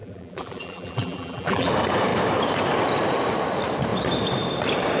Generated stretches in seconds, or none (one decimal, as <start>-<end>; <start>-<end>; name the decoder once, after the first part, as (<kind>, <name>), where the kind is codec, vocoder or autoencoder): 0.0-1.7 (vocoder, BigVGAN v2)